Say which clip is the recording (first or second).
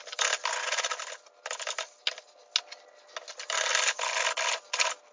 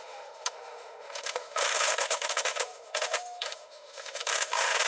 first